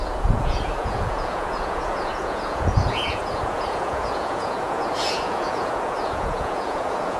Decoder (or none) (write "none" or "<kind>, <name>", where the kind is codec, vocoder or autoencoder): vocoder, Vocos